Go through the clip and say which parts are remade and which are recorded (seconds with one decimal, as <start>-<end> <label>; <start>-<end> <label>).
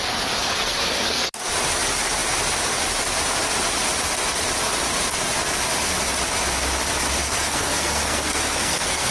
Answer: 0.0-0.4 recorded; 0.4-1.4 remade; 1.4-7.2 recorded; 7.2-9.1 remade